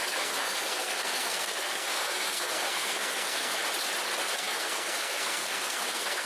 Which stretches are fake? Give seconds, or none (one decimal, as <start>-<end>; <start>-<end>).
0.0-3.6; 4.2-6.3